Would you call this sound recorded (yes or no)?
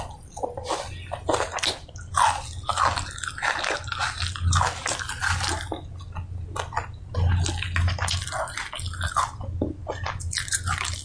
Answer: yes